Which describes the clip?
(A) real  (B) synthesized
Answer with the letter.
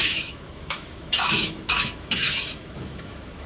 B